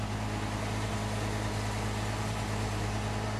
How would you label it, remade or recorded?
recorded